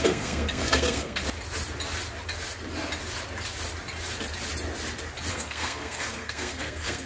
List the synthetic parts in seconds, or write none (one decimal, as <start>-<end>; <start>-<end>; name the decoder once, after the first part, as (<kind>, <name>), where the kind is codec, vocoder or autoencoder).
0.0-1.2 (codec, SNAC); 5.3-7.1